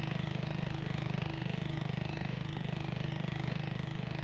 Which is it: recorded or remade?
remade